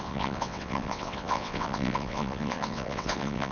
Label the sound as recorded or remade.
remade